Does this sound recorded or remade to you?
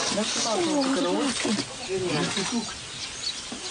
recorded